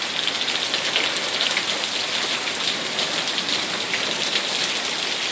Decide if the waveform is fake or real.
real